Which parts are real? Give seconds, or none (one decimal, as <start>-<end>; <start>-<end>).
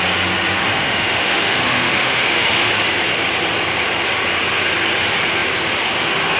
0.0-0.6; 2.7-6.4